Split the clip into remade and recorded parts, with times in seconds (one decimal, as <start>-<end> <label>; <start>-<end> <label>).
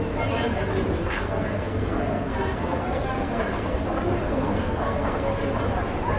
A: 0.0-1.0 recorded; 1.0-3.8 remade; 3.8-4.2 recorded; 4.2-5.3 remade; 5.3-6.2 recorded